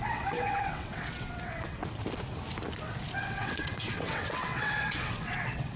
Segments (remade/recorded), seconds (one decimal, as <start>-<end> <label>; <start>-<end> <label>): 0.0-1.8 remade; 1.8-3.2 recorded; 3.2-5.8 remade